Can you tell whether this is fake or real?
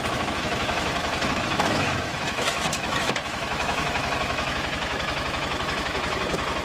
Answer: fake